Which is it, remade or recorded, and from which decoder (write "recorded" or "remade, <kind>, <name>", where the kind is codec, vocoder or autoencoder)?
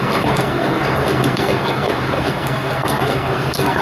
remade, codec, SNAC